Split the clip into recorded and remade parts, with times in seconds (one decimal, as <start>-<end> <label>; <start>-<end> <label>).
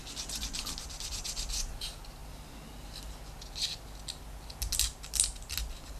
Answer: 0.0-6.0 recorded